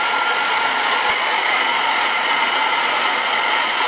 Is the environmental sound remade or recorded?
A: remade